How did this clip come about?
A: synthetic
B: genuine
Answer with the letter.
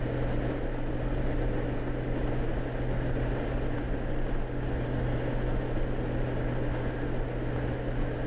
B